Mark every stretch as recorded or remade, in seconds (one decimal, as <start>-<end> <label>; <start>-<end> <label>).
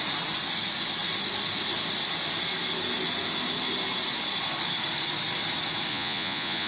0.0-5.9 recorded; 5.9-6.7 remade